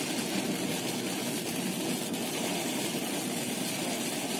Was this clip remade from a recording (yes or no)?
no